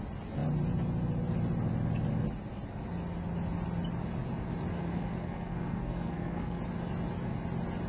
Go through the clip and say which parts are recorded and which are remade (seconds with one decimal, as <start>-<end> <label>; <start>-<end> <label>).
0.0-4.7 recorded; 4.7-6.6 remade; 6.6-7.9 recorded

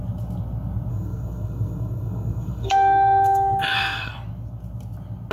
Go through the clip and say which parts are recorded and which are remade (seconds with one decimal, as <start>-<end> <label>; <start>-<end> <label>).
0.0-0.9 recorded; 0.9-4.1 remade; 4.1-5.3 recorded

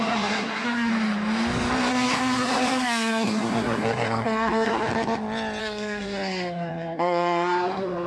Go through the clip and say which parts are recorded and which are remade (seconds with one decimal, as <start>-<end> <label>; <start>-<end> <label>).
0.0-0.9 remade; 0.9-1.9 recorded; 1.9-4.9 remade; 4.9-5.6 recorded; 5.6-8.1 remade

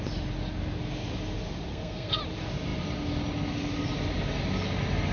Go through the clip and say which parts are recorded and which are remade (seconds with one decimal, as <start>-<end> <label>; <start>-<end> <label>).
0.0-1.7 recorded; 1.7-2.2 remade; 2.2-5.1 recorded